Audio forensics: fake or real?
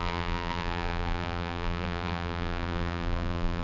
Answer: fake